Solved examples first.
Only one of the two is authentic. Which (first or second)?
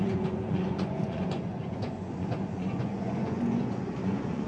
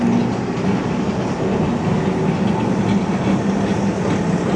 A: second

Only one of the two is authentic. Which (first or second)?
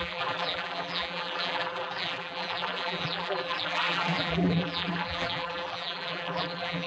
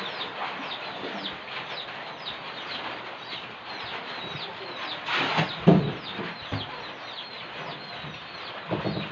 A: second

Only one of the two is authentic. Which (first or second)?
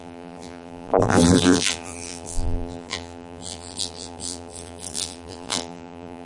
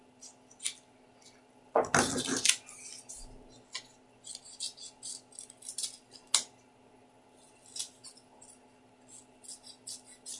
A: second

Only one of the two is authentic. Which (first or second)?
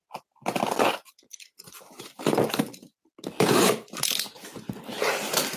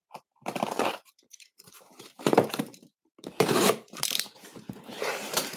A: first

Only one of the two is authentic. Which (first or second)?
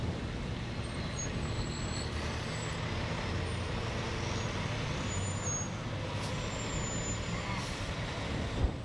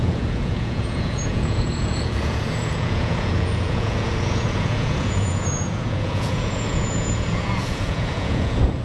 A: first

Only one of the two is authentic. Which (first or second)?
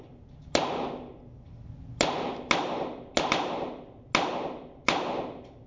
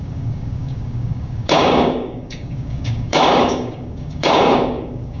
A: first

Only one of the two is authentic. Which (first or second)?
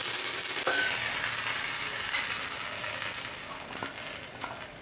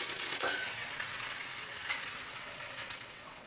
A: first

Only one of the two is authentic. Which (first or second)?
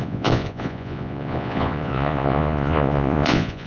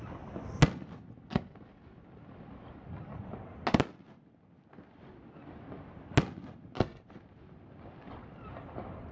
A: second